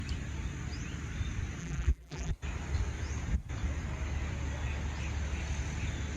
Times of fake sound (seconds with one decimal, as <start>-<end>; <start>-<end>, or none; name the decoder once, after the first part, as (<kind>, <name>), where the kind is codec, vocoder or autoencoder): 1.6-2.3 (vocoder, BigVGAN v2)